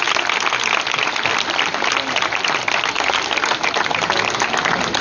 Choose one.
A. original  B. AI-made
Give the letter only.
A